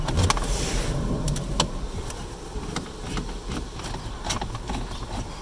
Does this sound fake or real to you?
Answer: real